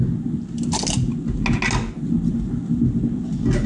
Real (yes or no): yes